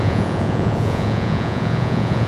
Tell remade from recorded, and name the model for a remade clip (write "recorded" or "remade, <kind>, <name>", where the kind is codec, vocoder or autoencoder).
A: remade, vocoder, Vocos